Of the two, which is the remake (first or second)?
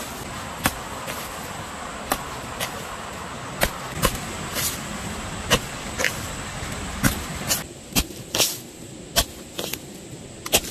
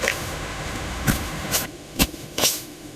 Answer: second